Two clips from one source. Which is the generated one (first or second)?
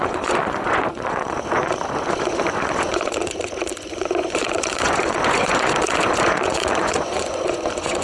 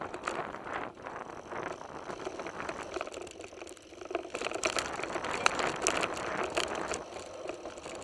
first